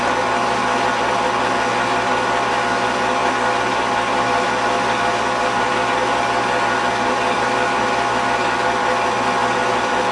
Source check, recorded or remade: recorded